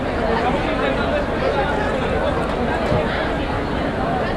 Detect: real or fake real